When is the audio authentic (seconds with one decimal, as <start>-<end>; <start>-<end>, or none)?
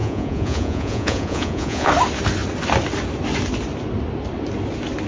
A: 1.9-5.1